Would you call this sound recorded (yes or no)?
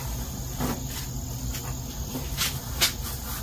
yes